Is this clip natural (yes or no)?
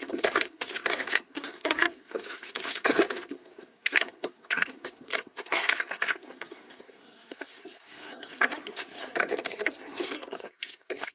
no